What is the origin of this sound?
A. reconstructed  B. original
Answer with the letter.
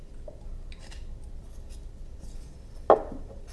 B